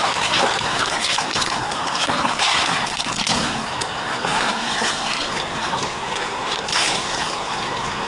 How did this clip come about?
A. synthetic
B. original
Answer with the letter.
A